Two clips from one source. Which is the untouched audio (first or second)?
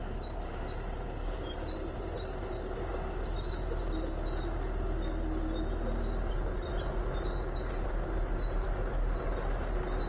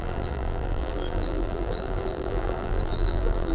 first